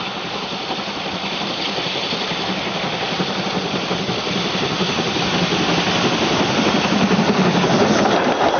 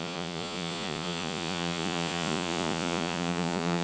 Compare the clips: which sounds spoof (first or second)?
second